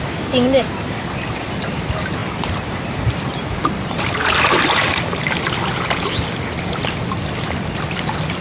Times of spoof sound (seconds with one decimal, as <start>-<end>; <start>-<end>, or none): 2.2-6.0